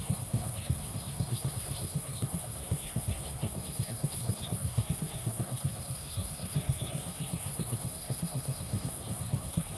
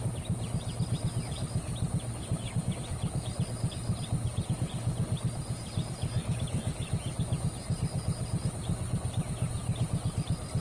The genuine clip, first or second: second